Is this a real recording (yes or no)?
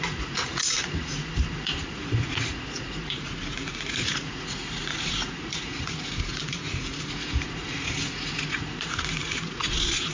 no